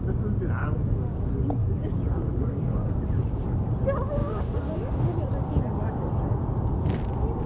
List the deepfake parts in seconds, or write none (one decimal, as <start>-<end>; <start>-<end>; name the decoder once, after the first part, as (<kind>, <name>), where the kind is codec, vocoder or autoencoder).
0.6-1.2 (codec, DAC); 1.6-3.0; 4.2-4.9